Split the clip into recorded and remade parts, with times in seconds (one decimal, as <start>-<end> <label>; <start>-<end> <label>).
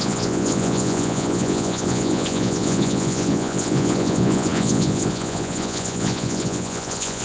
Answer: 0.0-7.2 remade